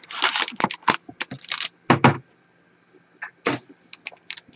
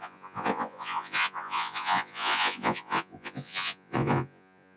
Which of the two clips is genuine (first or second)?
first